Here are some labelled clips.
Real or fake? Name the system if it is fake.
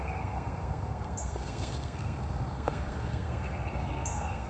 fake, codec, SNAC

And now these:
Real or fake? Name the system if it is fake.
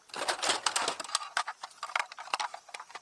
real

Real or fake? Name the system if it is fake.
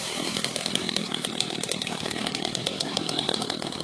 fake, codec, SNAC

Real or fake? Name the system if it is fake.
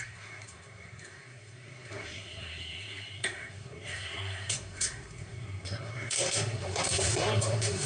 fake, codec, SNAC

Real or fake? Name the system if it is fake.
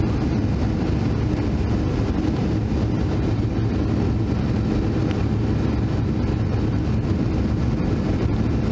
real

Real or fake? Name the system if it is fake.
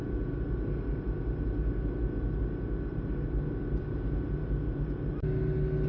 real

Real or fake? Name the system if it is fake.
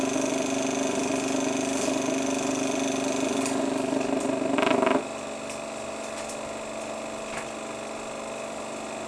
real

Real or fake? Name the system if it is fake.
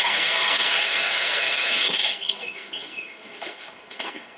fake, codec, SNAC